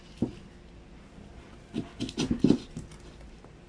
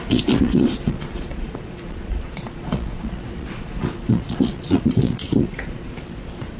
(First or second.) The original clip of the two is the first